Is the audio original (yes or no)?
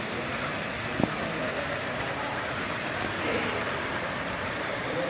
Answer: yes